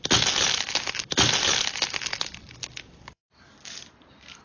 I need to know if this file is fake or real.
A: real